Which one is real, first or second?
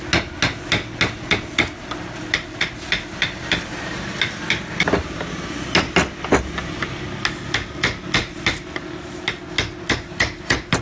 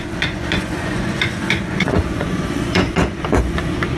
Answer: first